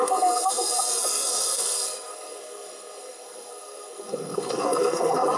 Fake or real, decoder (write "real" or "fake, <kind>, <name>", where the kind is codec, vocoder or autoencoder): fake, codec, SNAC